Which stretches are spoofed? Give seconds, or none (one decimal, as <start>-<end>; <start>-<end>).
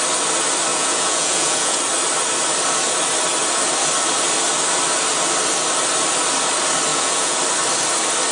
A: 0.7-1.8; 6.9-7.4